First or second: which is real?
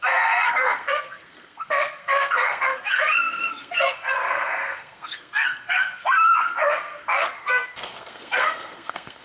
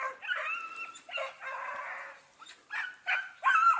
second